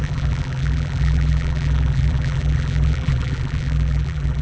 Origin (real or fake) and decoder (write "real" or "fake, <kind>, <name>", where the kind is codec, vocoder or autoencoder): fake, vocoder, BigVGAN v2